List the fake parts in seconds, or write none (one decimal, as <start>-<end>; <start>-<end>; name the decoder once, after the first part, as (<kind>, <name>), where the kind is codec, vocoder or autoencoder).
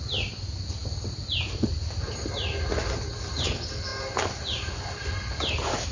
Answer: none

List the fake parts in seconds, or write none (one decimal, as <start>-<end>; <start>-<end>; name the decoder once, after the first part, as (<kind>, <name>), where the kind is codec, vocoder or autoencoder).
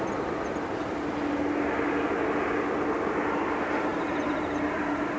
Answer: 3.9-4.8 (vocoder, BigVGAN v2)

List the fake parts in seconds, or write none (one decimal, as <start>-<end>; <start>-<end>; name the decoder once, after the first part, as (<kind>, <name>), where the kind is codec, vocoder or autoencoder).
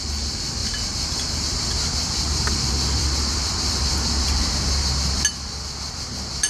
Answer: 0.6-4.5 (vocoder, BigVGAN v2)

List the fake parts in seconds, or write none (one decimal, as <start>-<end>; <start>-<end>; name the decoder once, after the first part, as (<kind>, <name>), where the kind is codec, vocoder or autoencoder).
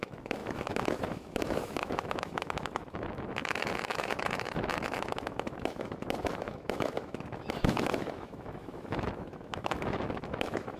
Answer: 0.0-10.8 (autoencoder, DAC-VAE)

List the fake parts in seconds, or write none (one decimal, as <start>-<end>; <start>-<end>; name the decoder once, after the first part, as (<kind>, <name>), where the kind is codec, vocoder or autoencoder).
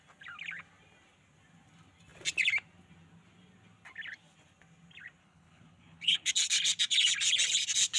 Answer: 5.2-6.3 (codec, HILCodec)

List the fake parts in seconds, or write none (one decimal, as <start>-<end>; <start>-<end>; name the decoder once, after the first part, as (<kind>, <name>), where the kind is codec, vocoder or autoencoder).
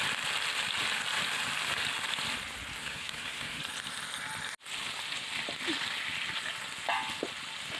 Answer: 2.8-3.6 (codec, SNAC)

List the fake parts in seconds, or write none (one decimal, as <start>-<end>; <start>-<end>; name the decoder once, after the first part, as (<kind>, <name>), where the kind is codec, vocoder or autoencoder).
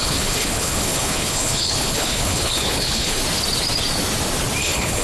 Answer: 0.0-3.2 (codec, HILCodec); 4.6-5.0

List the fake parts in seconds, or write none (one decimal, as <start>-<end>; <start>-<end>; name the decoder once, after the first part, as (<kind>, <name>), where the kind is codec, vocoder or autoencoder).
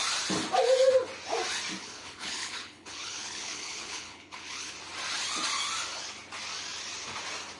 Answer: 1.8-4.7 (codec, HILCodec)